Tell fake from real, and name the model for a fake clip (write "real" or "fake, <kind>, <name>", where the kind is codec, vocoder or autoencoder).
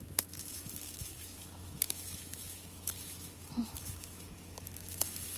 fake, autoencoder, DAC-VAE